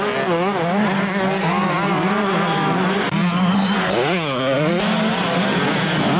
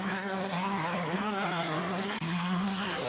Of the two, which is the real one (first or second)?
first